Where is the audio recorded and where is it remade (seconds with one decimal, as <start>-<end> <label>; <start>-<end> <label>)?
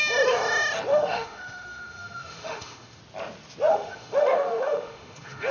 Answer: 0.0-0.9 recorded; 0.9-3.0 remade; 3.0-3.7 recorded; 3.7-5.5 remade